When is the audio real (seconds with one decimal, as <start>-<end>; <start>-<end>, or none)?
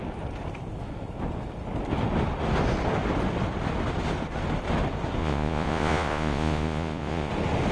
0.0-5.2; 7.3-7.7